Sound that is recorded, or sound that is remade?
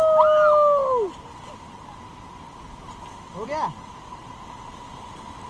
recorded